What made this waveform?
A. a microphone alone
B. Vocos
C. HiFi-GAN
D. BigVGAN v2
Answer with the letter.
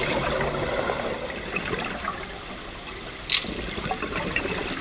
A